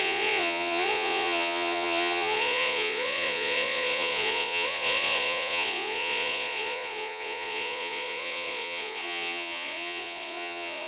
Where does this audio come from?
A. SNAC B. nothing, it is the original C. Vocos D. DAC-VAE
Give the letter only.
C